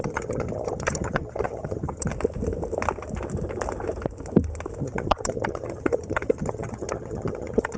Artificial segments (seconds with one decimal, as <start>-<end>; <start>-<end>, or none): 0.0-2.1; 4.8-7.8

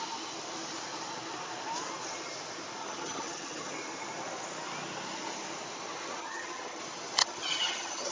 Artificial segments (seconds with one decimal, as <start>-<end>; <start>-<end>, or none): 2.8-3.7; 6.2-6.8; 7.2-8.1

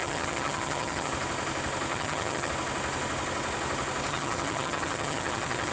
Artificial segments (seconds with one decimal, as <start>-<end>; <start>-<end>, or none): 0.0-1.1; 1.9-2.5; 4.1-5.7

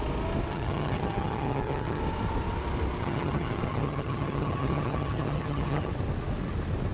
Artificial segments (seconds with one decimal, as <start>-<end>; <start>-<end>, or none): 0.5-2.0; 3.0-5.9